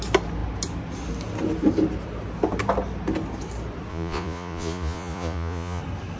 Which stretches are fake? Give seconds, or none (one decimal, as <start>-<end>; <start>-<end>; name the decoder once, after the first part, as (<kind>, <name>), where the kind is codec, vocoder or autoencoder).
3.9-5.8 (vocoder, Vocos)

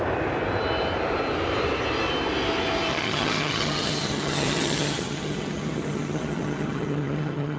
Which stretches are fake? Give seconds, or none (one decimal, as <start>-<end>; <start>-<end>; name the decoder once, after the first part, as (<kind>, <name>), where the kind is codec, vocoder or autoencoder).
2.9-7.6 (vocoder, HiFi-GAN)

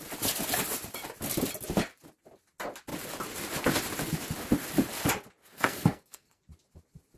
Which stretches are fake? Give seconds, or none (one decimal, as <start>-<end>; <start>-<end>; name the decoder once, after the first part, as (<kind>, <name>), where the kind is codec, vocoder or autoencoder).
5.4-6.4 (codec, SNAC)

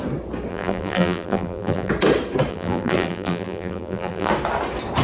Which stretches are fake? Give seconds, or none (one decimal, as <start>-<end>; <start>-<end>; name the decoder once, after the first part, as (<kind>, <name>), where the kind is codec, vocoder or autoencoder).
0.5-1.9 (vocoder, BigVGAN v2); 2.5-4.3

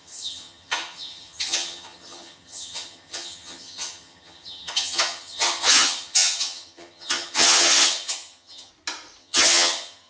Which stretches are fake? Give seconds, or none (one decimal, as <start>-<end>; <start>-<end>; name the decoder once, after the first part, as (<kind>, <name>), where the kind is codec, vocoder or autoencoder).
0.0-8.7 (vocoder, HiFi-GAN); 9.2-10.1

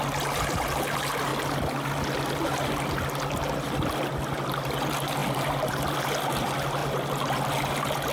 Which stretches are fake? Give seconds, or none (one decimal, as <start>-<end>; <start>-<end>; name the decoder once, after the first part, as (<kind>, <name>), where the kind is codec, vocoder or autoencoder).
none